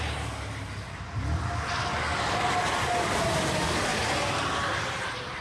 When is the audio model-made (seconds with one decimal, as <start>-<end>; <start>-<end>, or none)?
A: none